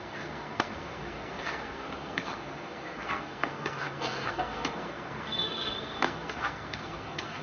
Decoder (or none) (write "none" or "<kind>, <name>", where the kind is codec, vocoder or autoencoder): codec, SNAC